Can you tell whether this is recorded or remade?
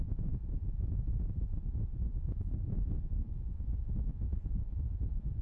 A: remade